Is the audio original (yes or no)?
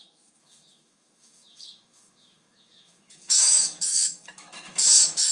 no